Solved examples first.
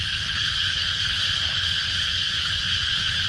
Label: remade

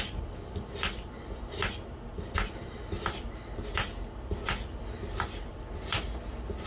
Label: recorded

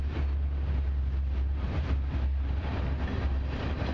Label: recorded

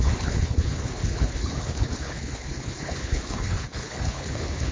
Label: remade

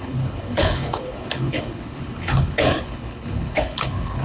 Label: remade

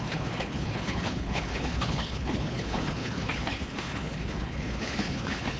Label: remade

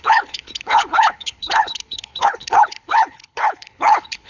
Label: remade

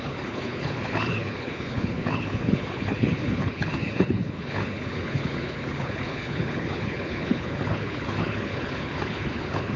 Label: remade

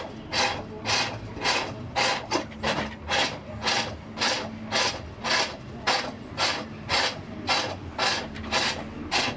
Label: recorded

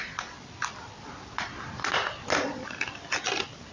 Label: recorded